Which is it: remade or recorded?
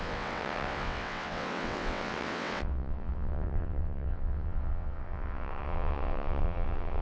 remade